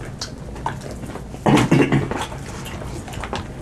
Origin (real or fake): real